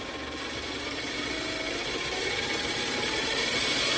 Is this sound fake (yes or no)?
no